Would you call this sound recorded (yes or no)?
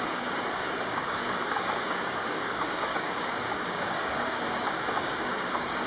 no